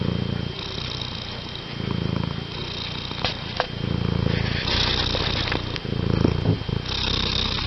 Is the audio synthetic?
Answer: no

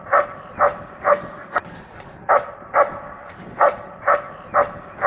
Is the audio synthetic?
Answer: no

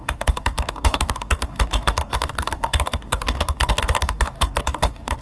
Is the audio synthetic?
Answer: yes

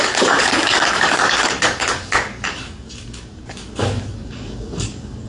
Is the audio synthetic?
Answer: yes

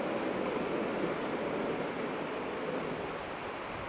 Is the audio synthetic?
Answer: no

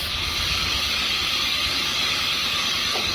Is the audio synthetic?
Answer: yes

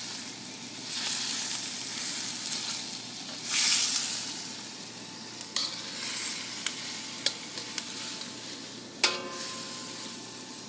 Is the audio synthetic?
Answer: no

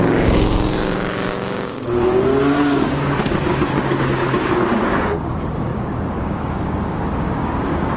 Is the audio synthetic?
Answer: yes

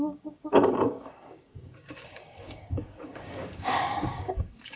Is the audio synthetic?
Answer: yes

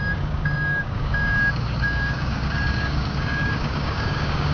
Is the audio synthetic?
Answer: yes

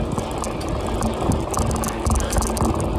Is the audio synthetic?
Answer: no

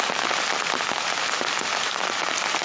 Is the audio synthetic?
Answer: no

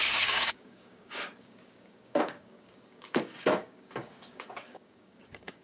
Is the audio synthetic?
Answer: yes